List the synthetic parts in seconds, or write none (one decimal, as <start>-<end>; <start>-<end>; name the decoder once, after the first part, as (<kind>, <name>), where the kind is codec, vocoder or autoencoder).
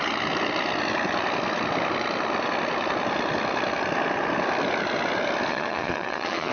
5.5-6.5 (vocoder, Vocos)